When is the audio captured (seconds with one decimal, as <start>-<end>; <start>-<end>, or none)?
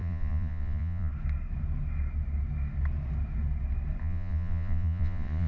1.1-4.0